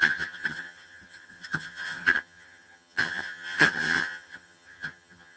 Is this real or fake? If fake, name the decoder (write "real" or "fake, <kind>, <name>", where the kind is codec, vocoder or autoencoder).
fake, vocoder, HiFi-GAN